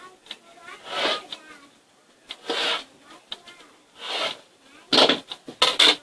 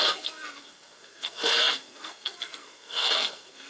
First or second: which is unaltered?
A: first